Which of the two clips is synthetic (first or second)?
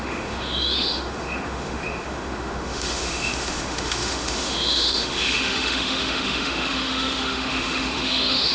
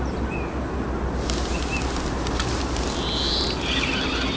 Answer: first